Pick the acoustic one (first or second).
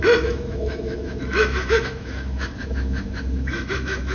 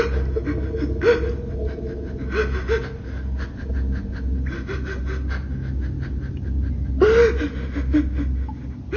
second